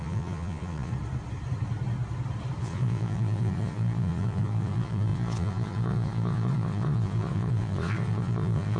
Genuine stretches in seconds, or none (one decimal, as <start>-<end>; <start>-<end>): 0.9-2.6